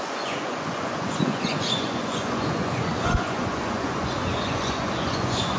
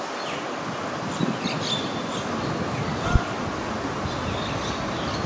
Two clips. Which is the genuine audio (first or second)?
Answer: second